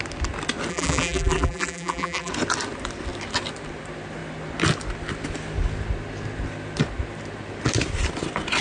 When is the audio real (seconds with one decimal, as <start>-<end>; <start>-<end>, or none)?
0.0-0.7; 2.3-8.6